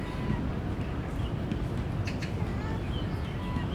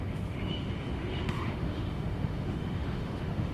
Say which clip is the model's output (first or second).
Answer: second